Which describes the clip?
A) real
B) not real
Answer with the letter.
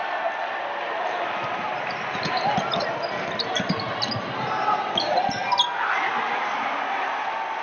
A